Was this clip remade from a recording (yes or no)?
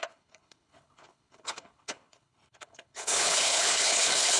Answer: yes